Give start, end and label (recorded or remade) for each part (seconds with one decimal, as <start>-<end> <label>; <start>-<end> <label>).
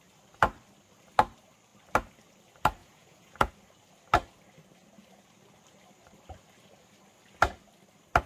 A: 0.0-2.8 recorded; 2.8-3.5 remade; 3.5-8.3 recorded